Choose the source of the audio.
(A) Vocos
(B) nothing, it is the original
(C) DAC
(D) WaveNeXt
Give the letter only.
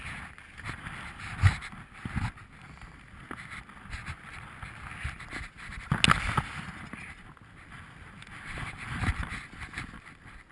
B